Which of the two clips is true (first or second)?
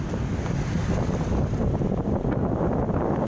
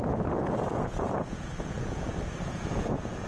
first